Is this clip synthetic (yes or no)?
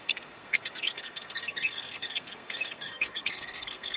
yes